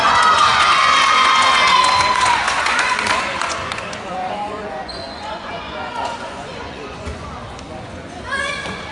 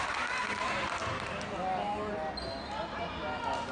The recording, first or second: second